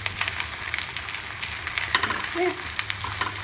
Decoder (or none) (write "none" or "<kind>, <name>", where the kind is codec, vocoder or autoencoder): none